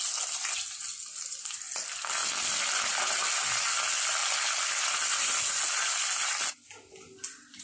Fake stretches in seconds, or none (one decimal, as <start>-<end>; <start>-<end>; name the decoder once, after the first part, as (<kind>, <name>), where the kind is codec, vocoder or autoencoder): none